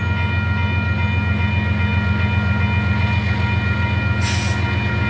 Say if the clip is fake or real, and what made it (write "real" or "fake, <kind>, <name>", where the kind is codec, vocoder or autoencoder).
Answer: real